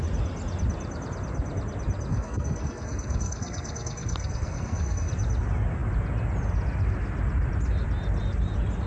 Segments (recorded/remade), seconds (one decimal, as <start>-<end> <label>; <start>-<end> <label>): 0.0-2.1 recorded; 2.1-5.1 remade; 5.1-8.9 recorded